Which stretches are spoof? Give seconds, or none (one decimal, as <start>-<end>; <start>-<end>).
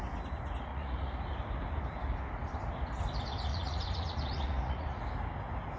0.7-1.2; 3.5-5.0